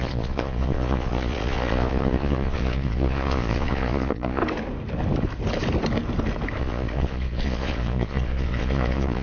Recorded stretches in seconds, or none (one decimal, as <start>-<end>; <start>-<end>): 4.4-6.6